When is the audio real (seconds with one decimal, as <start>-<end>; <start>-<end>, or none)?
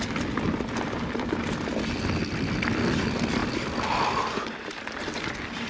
0.0-5.7